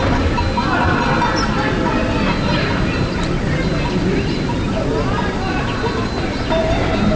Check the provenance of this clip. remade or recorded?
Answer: recorded